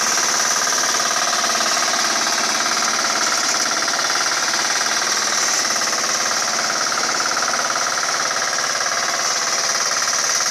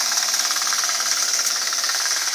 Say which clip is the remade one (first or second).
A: second